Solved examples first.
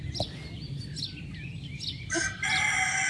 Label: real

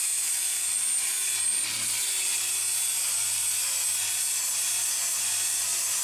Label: fake